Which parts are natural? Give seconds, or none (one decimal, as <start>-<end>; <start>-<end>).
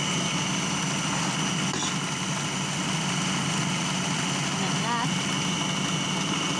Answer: 0.0-6.6